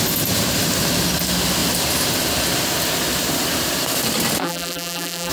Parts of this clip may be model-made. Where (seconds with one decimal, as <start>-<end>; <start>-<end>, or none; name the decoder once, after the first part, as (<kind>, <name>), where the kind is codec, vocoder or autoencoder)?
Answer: 4.4-5.3 (vocoder, BigVGAN v2)